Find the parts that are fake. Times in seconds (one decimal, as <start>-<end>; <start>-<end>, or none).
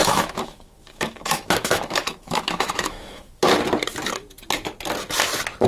0.0-3.4